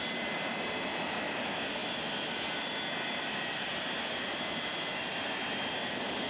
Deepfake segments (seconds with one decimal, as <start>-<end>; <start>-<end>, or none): none